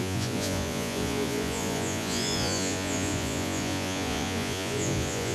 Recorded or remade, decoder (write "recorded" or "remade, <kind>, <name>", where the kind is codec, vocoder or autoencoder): remade, vocoder, Vocos